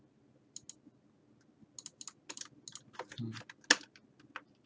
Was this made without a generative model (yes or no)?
yes